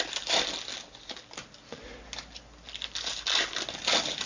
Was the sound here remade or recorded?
remade